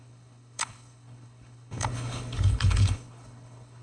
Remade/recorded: remade